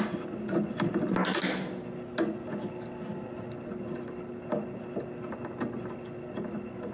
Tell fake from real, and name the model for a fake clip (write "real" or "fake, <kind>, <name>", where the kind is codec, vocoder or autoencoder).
real